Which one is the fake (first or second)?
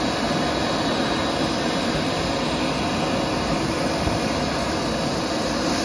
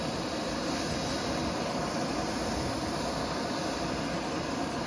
second